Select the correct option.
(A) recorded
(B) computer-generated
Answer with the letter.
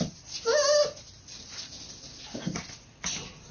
A